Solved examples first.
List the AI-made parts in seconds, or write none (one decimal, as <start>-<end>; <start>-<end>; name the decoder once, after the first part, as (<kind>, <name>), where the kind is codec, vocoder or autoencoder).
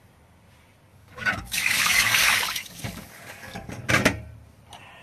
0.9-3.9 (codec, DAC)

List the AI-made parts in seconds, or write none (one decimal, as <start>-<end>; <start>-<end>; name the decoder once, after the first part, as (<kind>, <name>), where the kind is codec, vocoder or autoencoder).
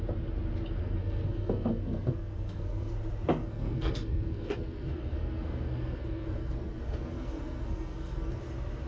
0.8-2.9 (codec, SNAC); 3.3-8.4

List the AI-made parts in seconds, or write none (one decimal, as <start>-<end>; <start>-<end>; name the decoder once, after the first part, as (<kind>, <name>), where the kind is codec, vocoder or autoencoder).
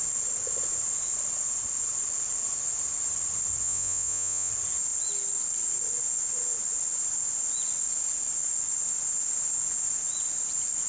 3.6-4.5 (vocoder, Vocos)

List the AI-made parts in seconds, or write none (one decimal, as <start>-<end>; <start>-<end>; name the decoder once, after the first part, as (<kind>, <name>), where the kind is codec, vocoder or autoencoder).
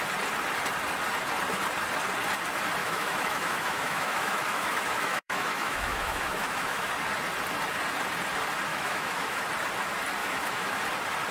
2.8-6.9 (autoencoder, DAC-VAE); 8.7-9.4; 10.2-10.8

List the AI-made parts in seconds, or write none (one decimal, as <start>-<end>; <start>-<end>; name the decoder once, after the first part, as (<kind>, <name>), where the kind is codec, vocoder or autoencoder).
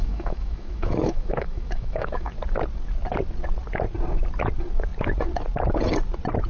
0.0-2.3 (autoencoder, DAC-VAE)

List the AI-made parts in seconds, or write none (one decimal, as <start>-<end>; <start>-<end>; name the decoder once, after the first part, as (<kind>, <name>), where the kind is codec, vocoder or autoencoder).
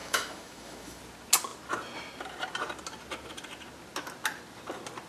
0.0-1.0 (autoencoder, DAC-VAE)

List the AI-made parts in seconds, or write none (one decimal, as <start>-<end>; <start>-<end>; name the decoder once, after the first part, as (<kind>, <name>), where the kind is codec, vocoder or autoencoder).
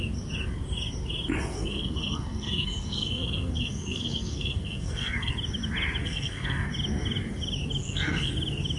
1.5-5.3 (codec, SNAC); 6.0-6.7; 7.8-8.3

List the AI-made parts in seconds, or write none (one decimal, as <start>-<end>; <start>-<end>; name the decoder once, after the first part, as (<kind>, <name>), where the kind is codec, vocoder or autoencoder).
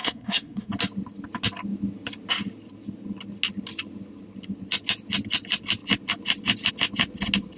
0.0-0.7 (codec, SNAC)